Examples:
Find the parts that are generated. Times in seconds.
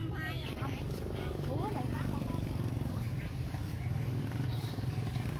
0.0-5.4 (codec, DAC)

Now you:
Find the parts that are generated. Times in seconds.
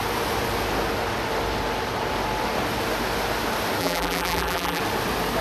3.8-4.8 (vocoder, BigVGAN v2)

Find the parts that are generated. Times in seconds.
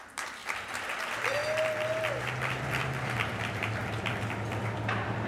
0.0-0.4 (vocoder, BigVGAN v2); 0.9-1.4; 2.6-5.3